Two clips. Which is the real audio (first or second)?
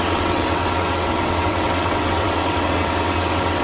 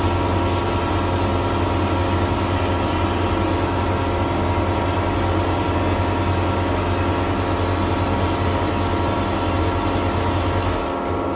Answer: second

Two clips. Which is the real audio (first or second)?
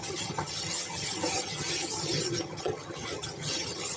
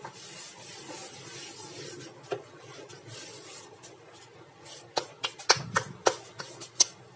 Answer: second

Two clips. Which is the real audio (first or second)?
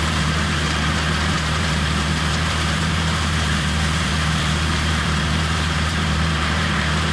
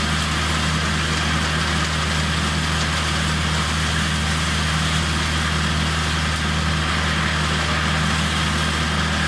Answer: second